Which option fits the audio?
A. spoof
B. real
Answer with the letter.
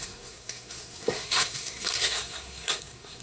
A